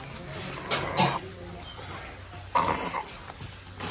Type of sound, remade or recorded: recorded